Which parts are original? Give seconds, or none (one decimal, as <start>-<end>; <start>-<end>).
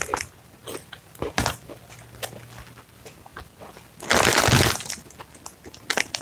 0.0-6.2